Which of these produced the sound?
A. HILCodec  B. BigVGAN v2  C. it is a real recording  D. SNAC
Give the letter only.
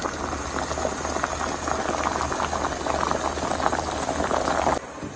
C